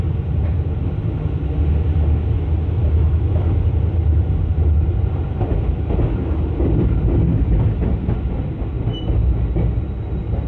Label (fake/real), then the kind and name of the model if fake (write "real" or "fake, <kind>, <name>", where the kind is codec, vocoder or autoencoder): real